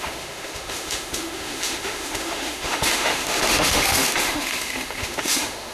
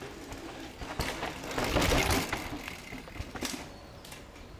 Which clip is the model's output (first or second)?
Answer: first